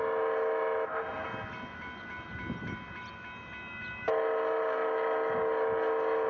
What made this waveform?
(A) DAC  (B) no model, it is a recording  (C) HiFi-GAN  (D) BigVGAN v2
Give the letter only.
B